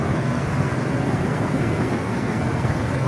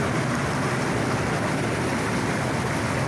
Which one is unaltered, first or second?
second